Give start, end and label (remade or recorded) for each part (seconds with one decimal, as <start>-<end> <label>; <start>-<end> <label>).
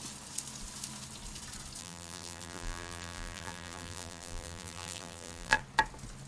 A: 0.0-1.8 recorded; 1.8-5.6 remade; 5.6-6.3 recorded